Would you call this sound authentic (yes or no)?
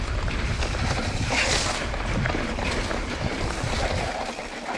yes